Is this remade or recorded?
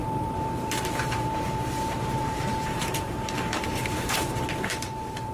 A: remade